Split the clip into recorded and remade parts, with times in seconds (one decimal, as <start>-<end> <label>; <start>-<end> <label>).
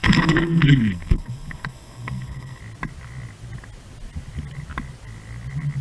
0.0-2.6 remade; 2.6-5.8 recorded